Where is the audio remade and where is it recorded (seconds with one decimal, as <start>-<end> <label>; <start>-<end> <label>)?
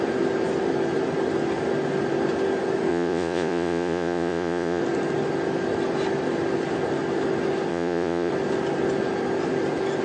0.0-2.9 recorded; 2.9-4.8 remade; 4.8-7.7 recorded; 7.7-8.3 remade; 8.3-10.0 recorded